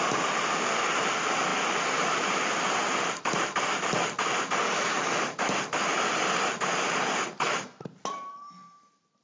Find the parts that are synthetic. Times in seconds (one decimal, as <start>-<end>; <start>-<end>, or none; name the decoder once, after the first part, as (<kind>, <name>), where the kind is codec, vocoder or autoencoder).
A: none